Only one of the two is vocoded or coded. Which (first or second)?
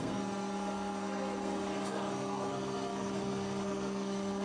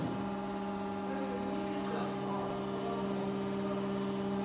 first